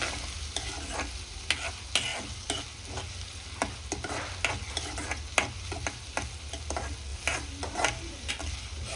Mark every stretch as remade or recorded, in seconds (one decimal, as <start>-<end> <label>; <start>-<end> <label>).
0.0-9.0 recorded